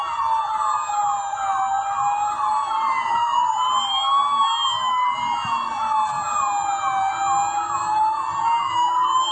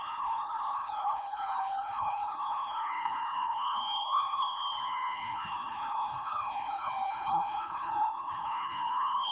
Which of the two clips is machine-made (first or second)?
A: second